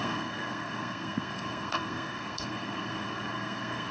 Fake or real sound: fake